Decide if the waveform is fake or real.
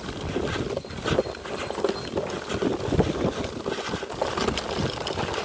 real